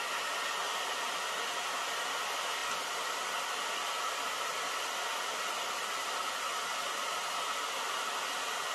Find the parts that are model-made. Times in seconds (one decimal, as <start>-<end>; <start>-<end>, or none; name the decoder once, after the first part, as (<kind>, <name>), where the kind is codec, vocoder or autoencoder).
none